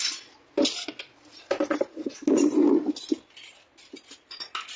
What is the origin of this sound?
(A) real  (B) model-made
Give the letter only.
A